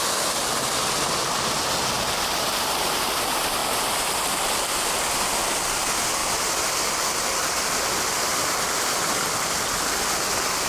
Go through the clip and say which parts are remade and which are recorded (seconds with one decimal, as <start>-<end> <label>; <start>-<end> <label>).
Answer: 0.0-10.7 recorded